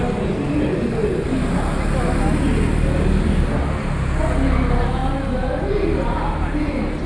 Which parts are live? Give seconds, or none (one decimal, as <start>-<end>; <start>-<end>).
0.0-7.1